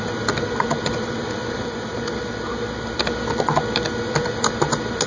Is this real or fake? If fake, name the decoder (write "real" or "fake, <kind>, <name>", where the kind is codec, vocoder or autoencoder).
real